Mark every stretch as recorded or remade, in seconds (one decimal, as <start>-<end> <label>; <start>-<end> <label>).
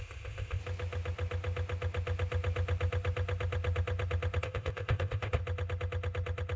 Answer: 0.0-0.6 remade; 0.6-4.4 recorded; 4.4-5.4 remade; 5.4-6.6 recorded